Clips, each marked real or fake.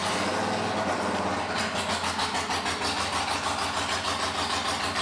real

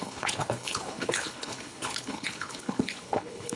fake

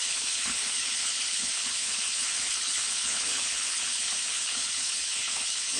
fake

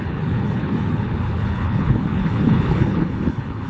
fake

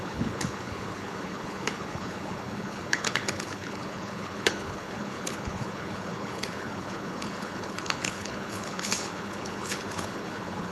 fake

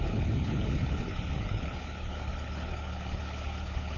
fake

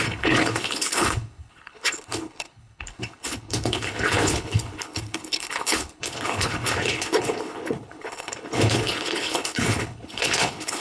fake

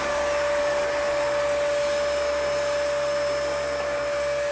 real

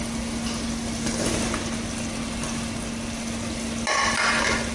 real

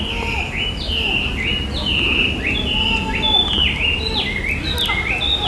real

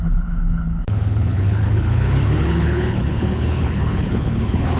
fake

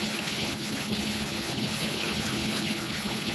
fake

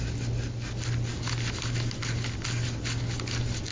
real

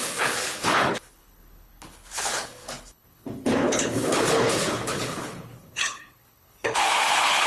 fake